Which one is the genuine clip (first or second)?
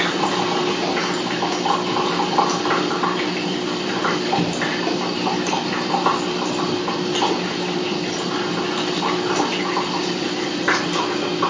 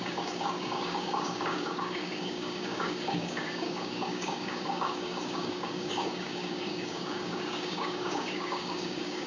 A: first